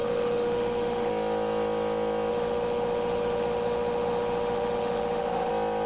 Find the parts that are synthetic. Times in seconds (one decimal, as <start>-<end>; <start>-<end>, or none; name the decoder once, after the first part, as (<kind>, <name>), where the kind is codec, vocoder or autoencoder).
0.0-1.1 (autoencoder, DAC-VAE); 2.3-5.5